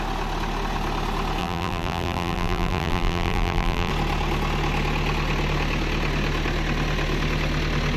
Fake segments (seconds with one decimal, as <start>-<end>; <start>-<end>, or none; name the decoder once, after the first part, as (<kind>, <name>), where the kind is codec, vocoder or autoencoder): 1.4-3.9 (vocoder, BigVGAN v2)